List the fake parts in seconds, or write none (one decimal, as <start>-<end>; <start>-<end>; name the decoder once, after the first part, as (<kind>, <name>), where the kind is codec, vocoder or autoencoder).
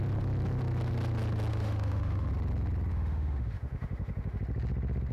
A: 1.5-2.3 (autoencoder, DAC-VAE); 2.9-4.4